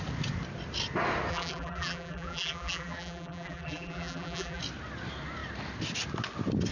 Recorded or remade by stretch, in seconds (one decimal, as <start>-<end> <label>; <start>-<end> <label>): 0.0-1.3 recorded; 1.3-4.6 remade; 4.6-6.7 recorded